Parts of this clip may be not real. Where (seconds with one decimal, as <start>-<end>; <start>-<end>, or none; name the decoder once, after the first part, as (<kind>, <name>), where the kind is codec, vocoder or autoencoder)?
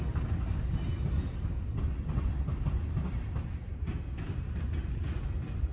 none